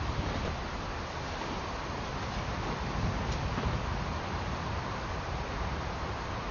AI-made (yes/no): yes